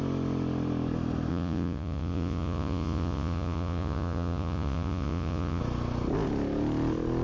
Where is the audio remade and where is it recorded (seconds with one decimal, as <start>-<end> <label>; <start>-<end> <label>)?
0.0-1.3 recorded; 1.3-5.6 remade; 5.6-7.2 recorded

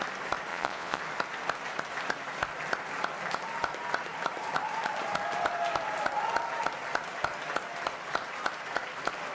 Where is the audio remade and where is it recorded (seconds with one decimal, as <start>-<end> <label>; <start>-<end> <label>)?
0.0-0.5 recorded; 0.5-1.0 remade; 1.0-9.3 recorded

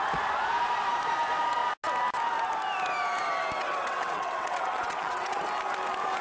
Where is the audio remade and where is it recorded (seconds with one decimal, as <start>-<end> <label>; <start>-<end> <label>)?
0.0-3.6 recorded; 3.6-5.4 remade; 5.4-6.2 recorded